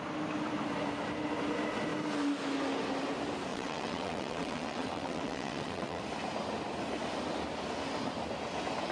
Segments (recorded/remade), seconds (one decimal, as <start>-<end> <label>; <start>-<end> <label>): 0.0-3.5 recorded; 3.5-6.0 remade; 6.0-8.9 recorded